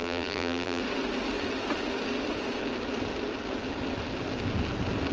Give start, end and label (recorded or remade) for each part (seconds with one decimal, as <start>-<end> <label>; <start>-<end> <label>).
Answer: 0.0-0.8 remade; 0.8-5.1 recorded